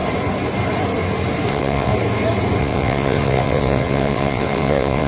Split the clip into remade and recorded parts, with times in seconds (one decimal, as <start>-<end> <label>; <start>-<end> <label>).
0.0-1.5 recorded; 1.5-1.9 remade; 1.9-2.6 recorded; 2.6-5.1 remade